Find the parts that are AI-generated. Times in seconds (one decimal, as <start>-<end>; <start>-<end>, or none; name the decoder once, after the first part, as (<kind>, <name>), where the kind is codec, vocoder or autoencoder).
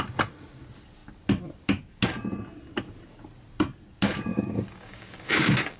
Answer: 4.3-5.8 (codec, DAC)